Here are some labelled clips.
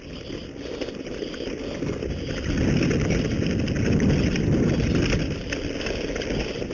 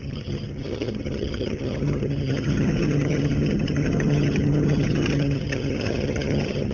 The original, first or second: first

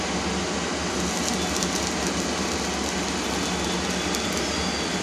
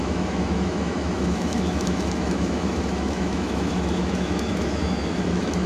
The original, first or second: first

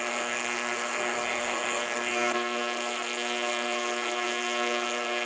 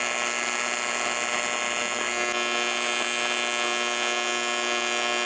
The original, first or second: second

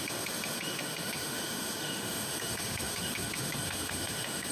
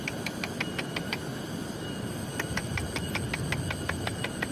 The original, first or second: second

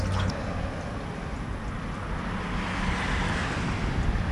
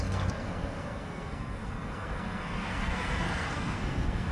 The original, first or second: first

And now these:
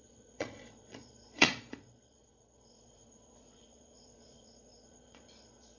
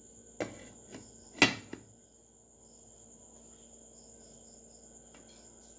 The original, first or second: second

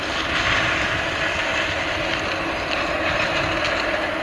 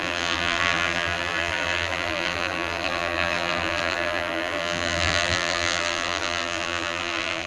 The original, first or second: first